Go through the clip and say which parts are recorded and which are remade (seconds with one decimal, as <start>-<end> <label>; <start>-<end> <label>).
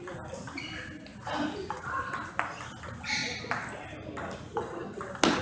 0.0-1.1 recorded; 1.1-2.0 remade; 2.0-5.4 recorded